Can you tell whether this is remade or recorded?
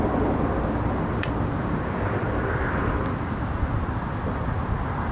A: recorded